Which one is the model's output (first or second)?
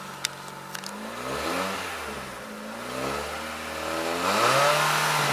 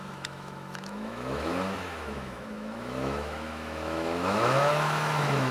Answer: second